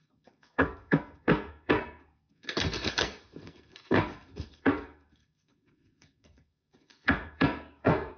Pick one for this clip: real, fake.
fake